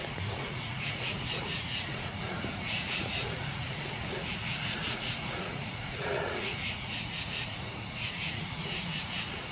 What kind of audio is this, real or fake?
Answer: fake